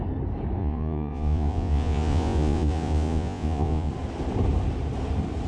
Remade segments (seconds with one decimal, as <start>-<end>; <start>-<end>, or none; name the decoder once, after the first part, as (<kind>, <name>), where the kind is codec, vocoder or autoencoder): 0.6-3.9 (vocoder, Vocos)